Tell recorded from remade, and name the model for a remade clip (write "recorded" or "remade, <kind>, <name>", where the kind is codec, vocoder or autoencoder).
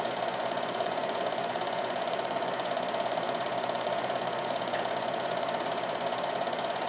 remade, vocoder, Vocos